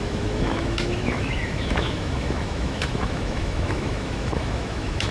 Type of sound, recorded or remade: remade